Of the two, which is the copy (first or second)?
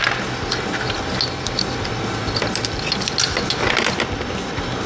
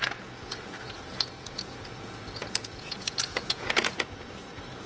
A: second